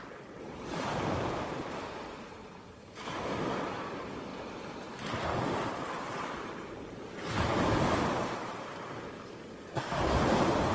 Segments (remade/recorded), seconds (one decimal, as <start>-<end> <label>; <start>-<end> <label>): 0.0-10.7 recorded